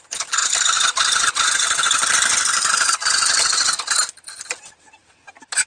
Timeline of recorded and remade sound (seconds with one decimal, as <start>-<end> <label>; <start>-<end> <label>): 0.0-0.4 recorded; 0.4-3.8 remade; 3.8-5.7 recorded